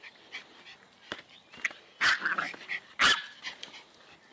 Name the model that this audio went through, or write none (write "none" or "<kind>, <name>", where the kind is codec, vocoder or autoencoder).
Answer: none